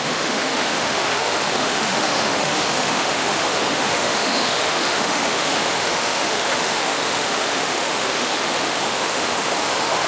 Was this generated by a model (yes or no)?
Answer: yes